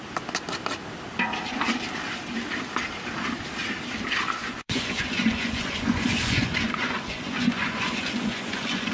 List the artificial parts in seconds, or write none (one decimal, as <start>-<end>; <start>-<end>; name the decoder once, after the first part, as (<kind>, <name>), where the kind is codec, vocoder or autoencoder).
4.4-8.9 (vocoder, Vocos)